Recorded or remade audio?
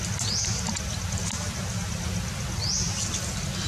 recorded